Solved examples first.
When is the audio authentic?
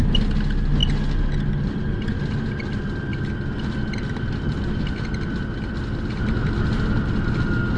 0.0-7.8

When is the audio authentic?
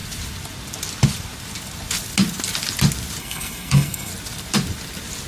0.0-3.2; 4.1-5.3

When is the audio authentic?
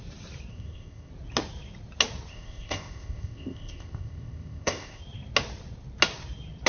0.0-0.5; 1.1-2.3; 5.0-6.7